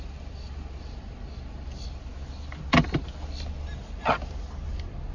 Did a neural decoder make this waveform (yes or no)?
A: no